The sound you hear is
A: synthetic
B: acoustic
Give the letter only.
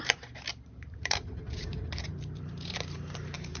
A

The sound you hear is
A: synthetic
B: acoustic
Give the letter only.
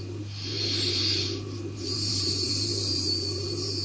A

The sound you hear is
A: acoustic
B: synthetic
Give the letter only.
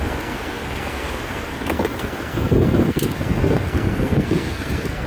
B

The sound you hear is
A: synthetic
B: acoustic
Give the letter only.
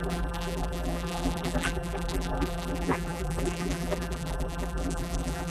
A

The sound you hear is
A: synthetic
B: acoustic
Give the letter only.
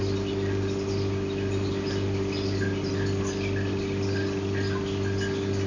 B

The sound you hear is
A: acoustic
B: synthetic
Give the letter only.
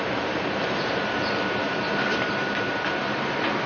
B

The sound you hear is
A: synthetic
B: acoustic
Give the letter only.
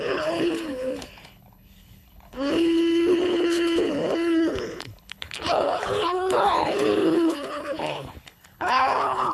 A